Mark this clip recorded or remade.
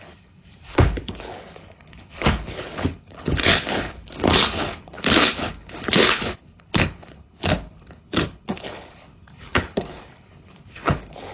remade